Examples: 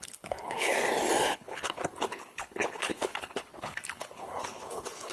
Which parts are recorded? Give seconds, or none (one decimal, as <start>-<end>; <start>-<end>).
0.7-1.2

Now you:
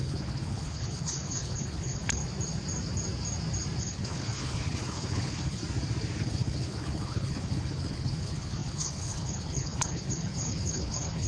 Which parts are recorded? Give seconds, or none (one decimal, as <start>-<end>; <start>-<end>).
2.2-3.8; 5.6-6.2

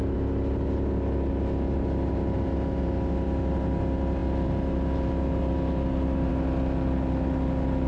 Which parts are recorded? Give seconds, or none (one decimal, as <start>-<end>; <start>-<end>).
0.0-7.9

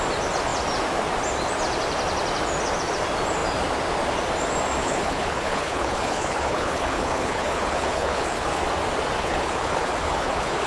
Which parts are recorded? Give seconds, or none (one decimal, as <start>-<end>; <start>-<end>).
0.0-4.8; 8.6-9.2